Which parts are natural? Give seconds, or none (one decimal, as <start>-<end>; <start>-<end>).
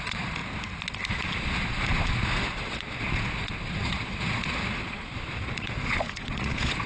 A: 0.4-1.1